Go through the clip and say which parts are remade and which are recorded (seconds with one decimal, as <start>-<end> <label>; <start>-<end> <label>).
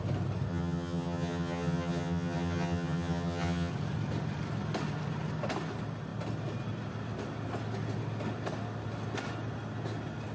0.0-0.5 recorded; 0.5-3.7 remade; 3.7-10.3 recorded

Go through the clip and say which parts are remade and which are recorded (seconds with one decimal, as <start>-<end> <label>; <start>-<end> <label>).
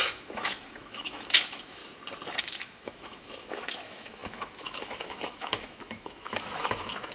0.0-1.8 remade; 1.8-2.4 recorded; 2.4-7.1 remade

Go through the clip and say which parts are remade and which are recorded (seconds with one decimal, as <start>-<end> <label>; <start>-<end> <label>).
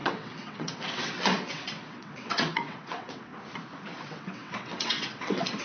0.0-3.3 remade; 3.3-4.0 recorded; 4.0-5.6 remade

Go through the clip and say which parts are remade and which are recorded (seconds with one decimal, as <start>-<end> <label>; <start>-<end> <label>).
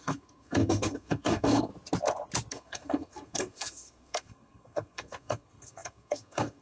0.0-1.7 remade; 1.7-2.5 recorded; 2.5-6.6 remade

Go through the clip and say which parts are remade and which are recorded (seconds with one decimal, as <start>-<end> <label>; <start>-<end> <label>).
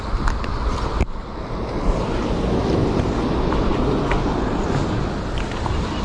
0.0-6.0 recorded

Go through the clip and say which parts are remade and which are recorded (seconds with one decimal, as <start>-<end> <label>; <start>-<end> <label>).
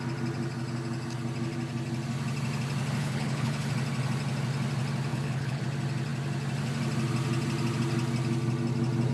0.0-3.0 recorded; 3.0-3.7 remade; 3.7-5.1 recorded; 5.1-5.6 remade; 5.6-9.1 recorded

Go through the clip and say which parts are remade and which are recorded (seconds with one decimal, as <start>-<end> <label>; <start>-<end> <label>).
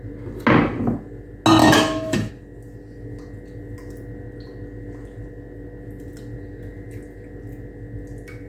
0.0-1.6 recorded; 1.6-2.3 remade; 2.3-8.5 recorded